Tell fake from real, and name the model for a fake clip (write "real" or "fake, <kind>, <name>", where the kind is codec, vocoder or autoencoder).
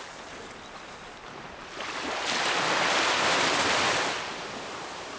real